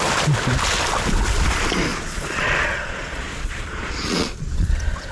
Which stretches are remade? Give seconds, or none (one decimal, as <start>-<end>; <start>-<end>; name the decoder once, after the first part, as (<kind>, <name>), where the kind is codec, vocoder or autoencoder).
1.9-5.1 (vocoder, Vocos)